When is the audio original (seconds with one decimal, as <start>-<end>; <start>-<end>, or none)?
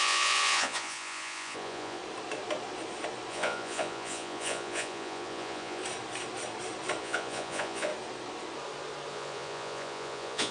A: 2.0-3.3; 5.8-7.0; 7.9-9.1